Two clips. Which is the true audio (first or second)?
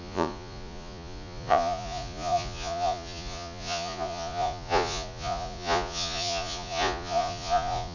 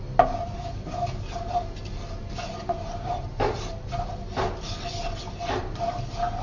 second